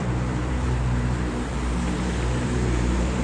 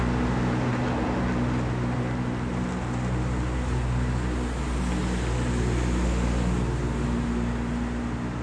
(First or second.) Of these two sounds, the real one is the second